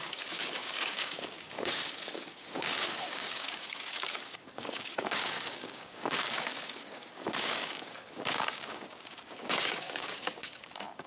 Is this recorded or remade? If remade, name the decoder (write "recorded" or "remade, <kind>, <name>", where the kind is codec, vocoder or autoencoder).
remade, codec, DAC